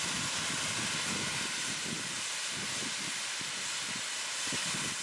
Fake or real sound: real